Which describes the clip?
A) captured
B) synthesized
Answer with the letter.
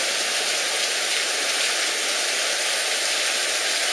A